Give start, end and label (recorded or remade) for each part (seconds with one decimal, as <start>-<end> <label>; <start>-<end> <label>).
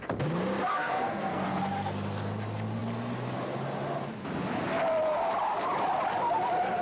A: 0.0-0.7 recorded; 0.7-1.6 remade; 1.6-6.8 recorded